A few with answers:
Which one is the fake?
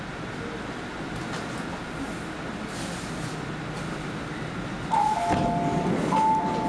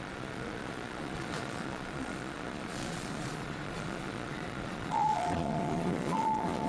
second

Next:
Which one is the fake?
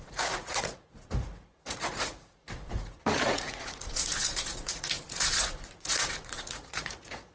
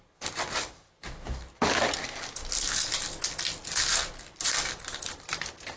first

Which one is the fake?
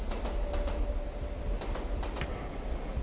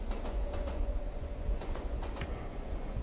second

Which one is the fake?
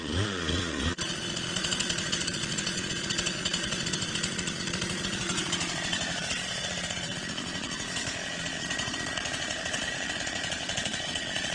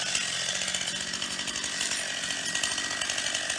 first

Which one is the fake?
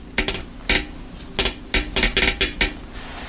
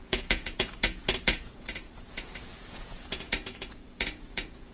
second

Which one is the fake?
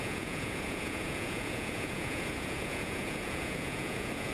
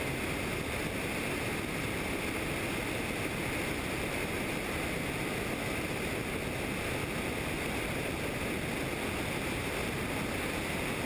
first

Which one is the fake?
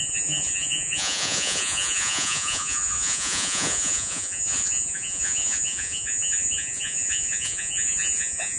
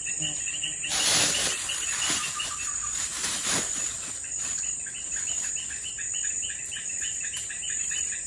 first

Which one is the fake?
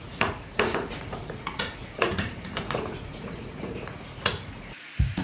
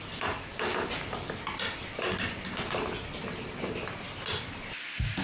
first